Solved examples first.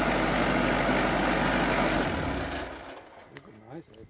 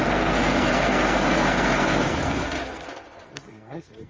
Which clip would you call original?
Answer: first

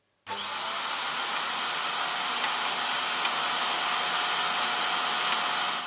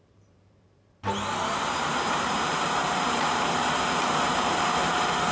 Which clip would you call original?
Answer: first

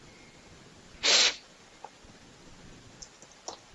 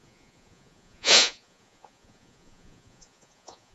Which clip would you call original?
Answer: first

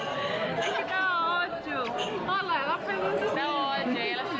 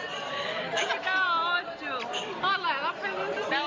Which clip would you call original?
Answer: first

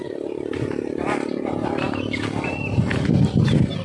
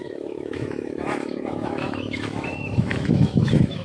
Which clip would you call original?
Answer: first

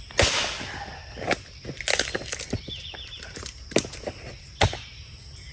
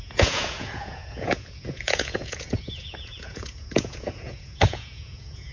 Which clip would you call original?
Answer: first